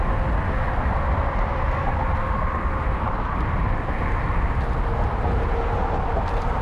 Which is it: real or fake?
real